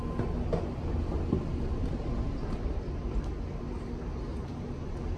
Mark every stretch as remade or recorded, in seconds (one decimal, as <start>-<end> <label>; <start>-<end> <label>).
0.0-4.3 recorded; 4.3-5.2 remade